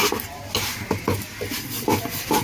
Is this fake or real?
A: real